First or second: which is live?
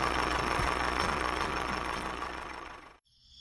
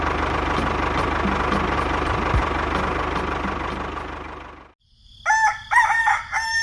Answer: second